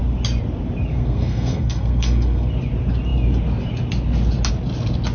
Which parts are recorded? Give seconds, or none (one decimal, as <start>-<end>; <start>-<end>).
0.0-0.9; 2.5-5.1